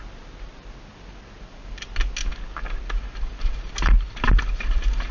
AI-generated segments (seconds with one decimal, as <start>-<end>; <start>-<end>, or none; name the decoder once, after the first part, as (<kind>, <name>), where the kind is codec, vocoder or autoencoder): none